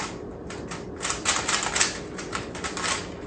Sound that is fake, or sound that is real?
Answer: real